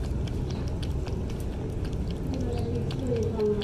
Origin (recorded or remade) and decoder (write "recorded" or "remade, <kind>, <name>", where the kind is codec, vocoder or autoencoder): recorded